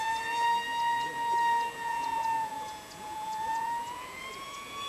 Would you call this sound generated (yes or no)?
yes